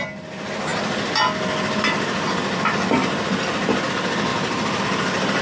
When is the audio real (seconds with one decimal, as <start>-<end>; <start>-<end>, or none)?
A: 0.0-5.4